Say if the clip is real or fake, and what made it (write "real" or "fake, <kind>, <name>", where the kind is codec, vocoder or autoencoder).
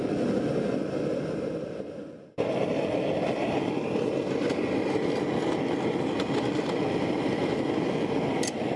real